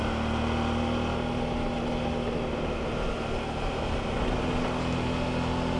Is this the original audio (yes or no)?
yes